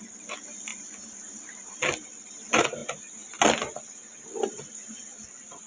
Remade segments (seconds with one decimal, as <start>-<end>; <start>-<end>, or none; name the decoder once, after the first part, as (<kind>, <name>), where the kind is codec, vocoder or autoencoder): none